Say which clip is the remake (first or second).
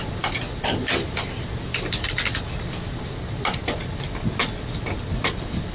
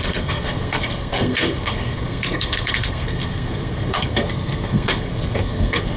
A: second